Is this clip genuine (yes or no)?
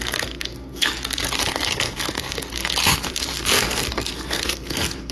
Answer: no